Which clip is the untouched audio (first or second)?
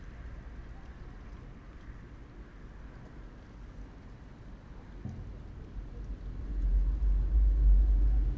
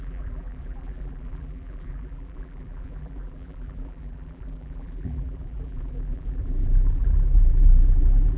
first